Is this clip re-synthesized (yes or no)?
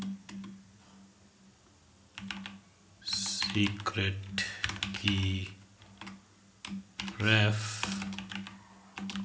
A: no